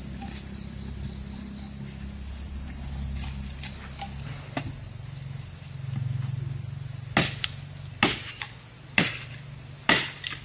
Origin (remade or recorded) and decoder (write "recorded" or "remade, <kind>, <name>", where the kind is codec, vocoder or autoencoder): recorded